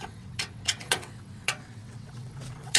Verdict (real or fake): fake